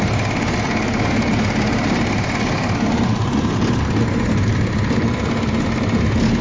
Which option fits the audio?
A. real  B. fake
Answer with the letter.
A